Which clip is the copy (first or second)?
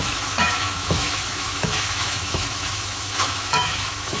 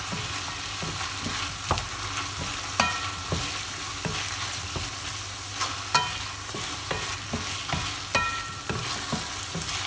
first